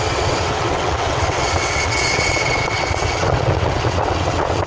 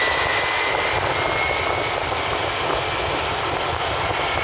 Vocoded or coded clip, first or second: first